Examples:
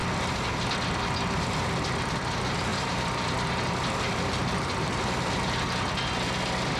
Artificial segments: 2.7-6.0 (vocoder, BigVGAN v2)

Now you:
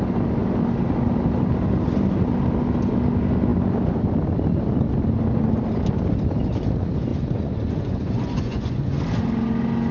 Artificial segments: 7.1-9.0 (vocoder, Vocos)